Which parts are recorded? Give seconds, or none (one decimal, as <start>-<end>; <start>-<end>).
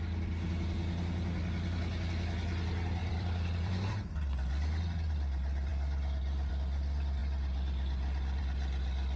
0.0-3.0; 4.8-9.2